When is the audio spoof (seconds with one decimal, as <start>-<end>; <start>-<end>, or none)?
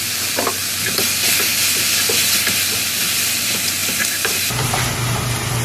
3.8-4.8